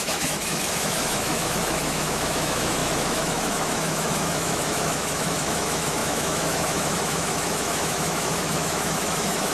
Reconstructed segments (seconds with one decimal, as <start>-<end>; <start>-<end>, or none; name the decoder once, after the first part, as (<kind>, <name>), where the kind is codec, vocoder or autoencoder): 0.0-9.5 (autoencoder, DAC-VAE)